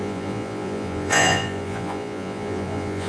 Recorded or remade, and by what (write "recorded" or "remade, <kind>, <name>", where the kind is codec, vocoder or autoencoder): remade, vocoder, Vocos